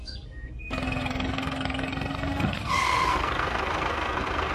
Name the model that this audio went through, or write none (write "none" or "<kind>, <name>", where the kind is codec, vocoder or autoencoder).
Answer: codec, SNAC